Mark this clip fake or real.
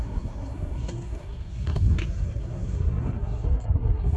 fake